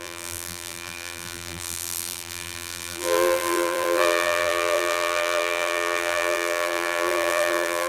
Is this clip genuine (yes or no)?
no